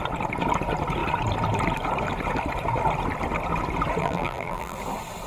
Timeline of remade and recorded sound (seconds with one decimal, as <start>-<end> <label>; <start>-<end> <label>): 0.0-4.0 recorded; 4.0-4.8 remade; 4.8-5.3 recorded